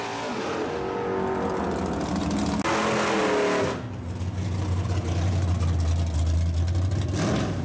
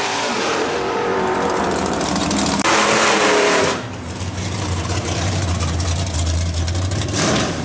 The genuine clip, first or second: first